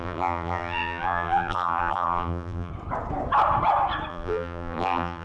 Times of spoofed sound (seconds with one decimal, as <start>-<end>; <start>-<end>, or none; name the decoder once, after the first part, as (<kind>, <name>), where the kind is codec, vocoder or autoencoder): 0.0-2.7 (vocoder, BigVGAN v2); 4.1-5.2